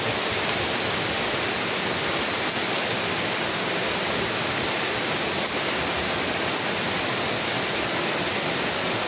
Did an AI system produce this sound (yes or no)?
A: no